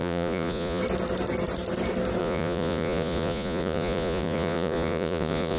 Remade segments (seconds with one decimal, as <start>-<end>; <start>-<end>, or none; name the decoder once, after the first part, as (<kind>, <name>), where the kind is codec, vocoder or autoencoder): 0.0-0.8 (vocoder, Vocos); 2.2-5.6